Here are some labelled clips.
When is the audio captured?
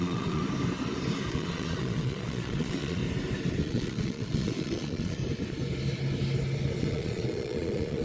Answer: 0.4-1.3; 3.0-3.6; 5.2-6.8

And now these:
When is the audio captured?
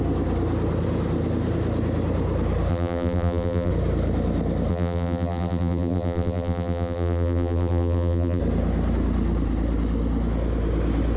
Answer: 0.0-2.7; 3.7-4.7; 8.4-11.2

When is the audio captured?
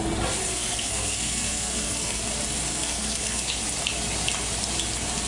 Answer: 0.0-0.5; 2.2-2.7; 3.5-5.3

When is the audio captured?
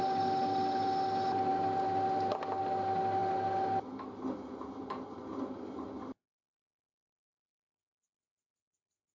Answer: 0.0-9.1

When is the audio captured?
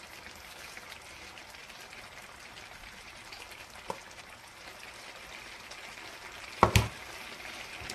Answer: 0.0-7.9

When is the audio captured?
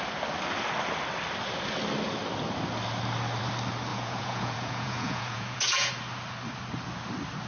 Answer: 0.0-3.9; 5.9-7.5